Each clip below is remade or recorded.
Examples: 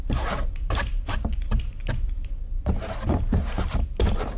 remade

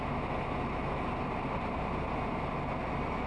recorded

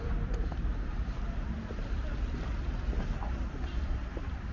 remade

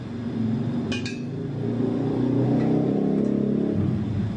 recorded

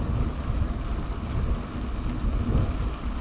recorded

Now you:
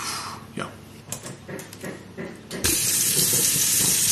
remade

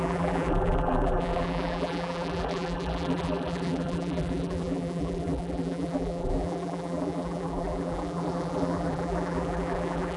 remade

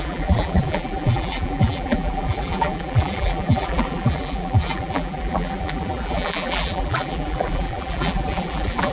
remade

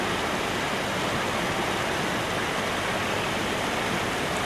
recorded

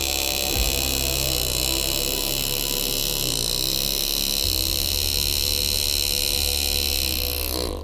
recorded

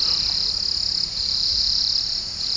recorded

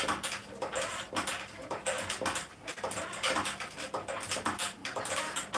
recorded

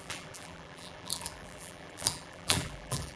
remade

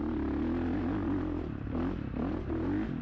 recorded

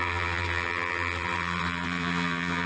remade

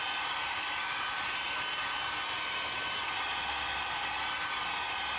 recorded